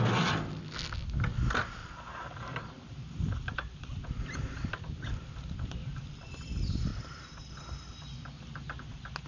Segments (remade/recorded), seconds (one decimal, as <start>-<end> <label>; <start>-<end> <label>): 0.0-1.8 recorded; 1.8-3.8 remade; 3.8-9.3 recorded